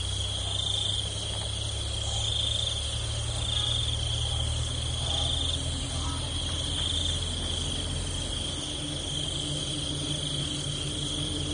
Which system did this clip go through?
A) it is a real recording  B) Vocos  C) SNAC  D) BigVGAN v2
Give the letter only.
A